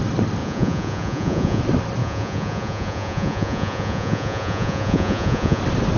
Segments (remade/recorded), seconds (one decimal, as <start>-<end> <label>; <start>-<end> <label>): 0.0-0.4 recorded; 0.4-1.6 remade; 1.6-2.0 recorded; 2.0-5.6 remade; 5.6-6.0 recorded